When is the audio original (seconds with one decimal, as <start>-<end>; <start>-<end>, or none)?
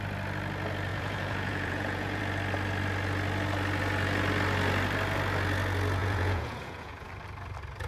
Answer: 0.0-0.9; 2.2-6.0; 7.1-7.9